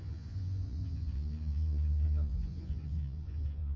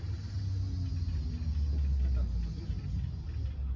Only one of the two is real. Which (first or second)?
second